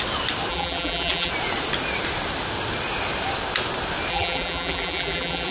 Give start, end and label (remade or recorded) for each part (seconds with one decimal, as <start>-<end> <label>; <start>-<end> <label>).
0.0-0.5 recorded; 0.5-1.3 remade; 1.3-4.1 recorded; 4.1-5.5 remade